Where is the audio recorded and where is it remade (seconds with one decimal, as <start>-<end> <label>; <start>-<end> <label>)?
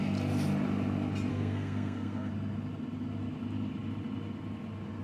0.0-1.3 recorded; 1.3-2.3 remade; 2.3-5.0 recorded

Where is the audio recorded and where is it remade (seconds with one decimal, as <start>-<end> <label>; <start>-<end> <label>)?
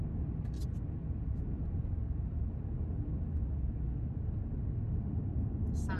0.0-6.0 recorded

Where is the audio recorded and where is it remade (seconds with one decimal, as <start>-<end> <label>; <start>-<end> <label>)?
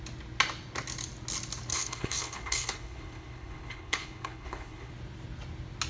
0.0-1.7 recorded; 1.7-4.9 remade; 4.9-5.9 recorded